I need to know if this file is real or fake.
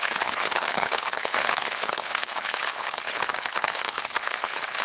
fake